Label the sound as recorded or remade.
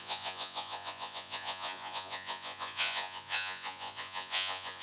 remade